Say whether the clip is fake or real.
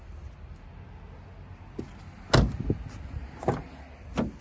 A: real